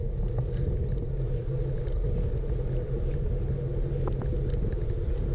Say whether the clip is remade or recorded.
recorded